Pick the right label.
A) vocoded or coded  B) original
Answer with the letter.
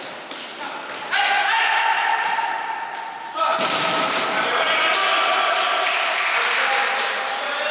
A